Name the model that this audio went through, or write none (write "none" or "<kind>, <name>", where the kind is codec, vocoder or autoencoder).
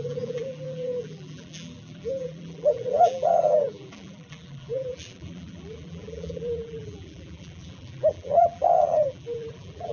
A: vocoder, BigVGAN v2